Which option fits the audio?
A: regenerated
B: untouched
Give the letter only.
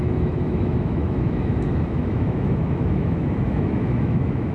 A